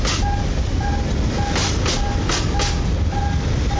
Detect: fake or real real